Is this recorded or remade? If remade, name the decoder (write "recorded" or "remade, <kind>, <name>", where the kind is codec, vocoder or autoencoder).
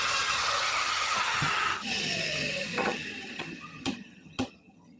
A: remade, vocoder, HiFi-GAN